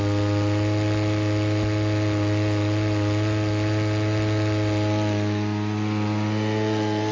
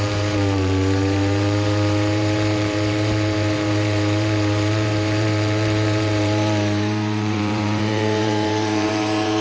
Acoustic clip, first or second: first